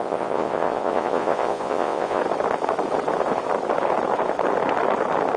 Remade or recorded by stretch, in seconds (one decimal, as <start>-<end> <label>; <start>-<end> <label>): 0.0-2.2 remade; 2.2-5.4 recorded